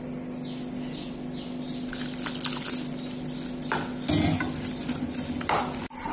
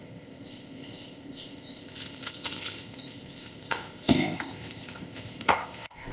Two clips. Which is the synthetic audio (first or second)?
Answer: second